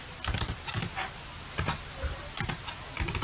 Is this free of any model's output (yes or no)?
yes